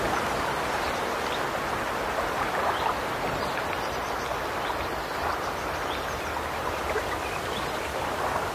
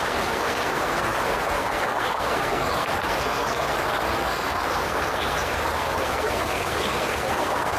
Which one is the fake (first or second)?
second